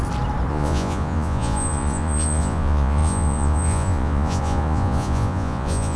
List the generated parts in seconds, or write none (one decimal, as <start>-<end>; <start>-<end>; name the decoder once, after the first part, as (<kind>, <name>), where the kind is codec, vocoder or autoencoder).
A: 0.5-6.0 (vocoder, Vocos)